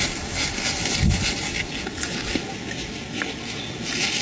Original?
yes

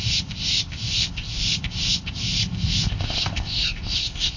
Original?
no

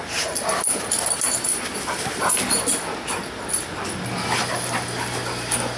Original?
yes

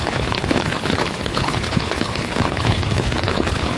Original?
no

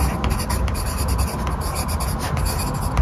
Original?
yes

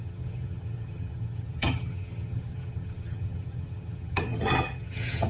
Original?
no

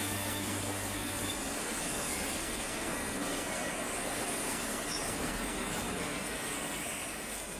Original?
no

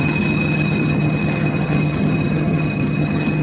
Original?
no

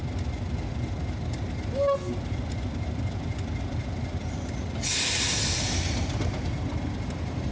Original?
yes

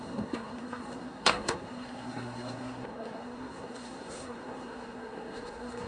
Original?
no